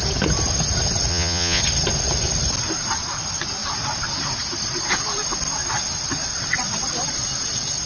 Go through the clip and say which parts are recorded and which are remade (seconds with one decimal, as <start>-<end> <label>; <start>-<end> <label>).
0.0-1.1 recorded; 1.1-1.6 remade; 1.6-7.9 recorded